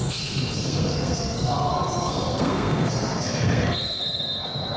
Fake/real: fake